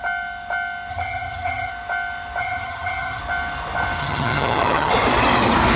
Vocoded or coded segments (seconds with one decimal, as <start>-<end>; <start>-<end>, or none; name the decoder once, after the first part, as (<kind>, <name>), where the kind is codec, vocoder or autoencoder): 0.9-1.7 (vocoder, HiFi-GAN); 2.4-3.2; 4.0-4.9